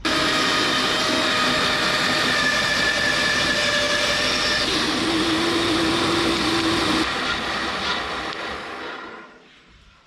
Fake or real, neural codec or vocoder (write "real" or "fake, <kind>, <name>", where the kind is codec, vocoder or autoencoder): real